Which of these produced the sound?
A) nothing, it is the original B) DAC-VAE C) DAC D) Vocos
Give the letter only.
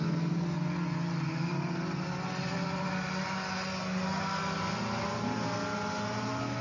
A